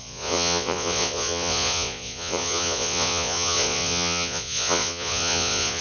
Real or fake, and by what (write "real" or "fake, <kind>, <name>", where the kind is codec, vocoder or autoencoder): fake, vocoder, Vocos